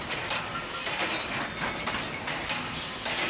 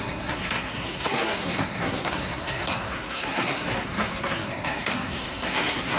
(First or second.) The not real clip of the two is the second